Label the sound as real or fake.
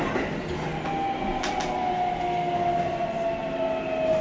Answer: real